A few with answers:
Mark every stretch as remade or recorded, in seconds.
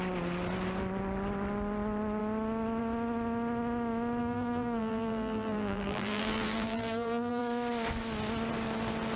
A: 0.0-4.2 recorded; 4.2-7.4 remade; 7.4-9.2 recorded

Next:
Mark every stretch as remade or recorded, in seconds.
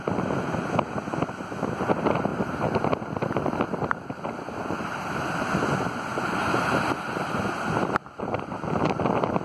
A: 0.0-9.4 recorded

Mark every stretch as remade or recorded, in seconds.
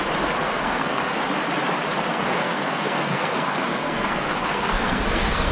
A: 0.0-0.4 recorded; 0.4-1.2 remade; 1.2-2.1 recorded; 2.1-5.5 remade